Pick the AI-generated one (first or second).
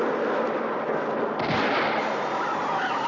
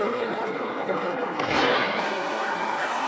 second